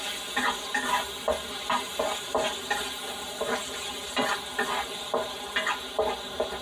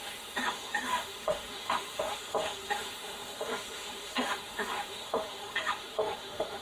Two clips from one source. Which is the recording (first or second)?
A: first